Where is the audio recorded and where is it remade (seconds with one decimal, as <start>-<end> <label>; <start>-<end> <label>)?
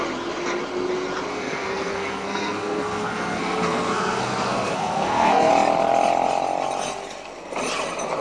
0.0-1.3 recorded; 1.3-5.5 remade; 5.5-8.2 recorded